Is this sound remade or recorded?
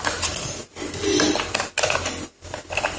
recorded